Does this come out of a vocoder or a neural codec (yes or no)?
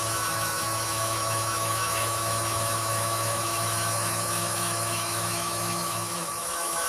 yes